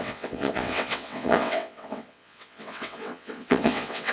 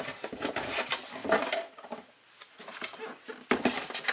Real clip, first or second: second